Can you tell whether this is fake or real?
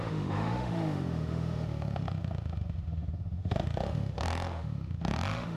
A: fake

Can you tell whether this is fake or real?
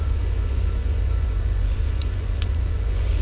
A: fake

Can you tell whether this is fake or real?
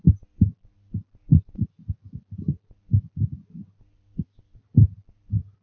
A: real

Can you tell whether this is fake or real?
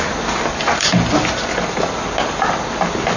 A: real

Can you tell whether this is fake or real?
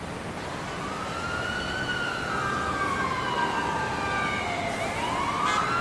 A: real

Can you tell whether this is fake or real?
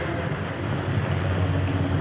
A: real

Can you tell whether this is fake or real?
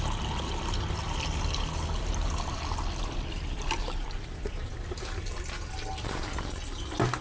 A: real